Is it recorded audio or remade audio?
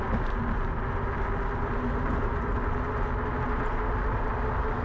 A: recorded